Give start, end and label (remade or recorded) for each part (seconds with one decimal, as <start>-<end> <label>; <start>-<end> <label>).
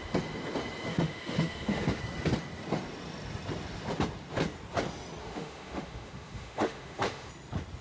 0.0-0.9 recorded; 0.9-2.0 remade; 2.0-5.2 recorded; 5.2-7.3 remade; 7.3-7.8 recorded